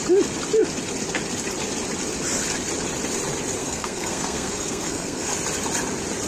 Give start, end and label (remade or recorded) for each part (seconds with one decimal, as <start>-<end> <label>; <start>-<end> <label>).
0.0-3.6 recorded; 3.6-5.3 remade; 5.3-6.3 recorded

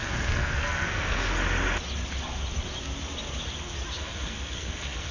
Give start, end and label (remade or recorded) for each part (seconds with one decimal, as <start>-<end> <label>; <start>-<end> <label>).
0.0-1.3 remade; 1.3-3.9 recorded; 3.9-5.1 remade

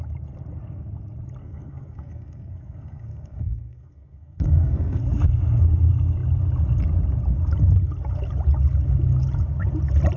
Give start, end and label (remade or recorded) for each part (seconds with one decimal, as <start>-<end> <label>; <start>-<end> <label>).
0.0-1.4 recorded; 1.4-5.0 remade; 5.0-10.2 recorded

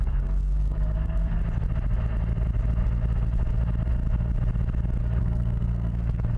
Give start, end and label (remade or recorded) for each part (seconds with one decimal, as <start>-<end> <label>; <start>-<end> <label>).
0.0-1.4 remade; 1.4-5.2 recorded; 5.2-6.4 remade

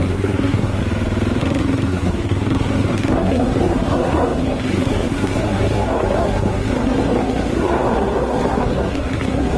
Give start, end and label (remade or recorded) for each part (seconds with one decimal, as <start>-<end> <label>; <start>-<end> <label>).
0.0-0.8 remade; 0.8-1.4 recorded; 1.4-9.6 remade

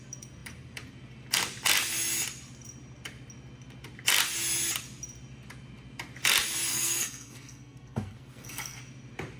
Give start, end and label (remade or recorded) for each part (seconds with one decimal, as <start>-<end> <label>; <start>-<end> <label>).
0.0-6.7 recorded; 6.7-8.8 remade; 8.8-9.4 recorded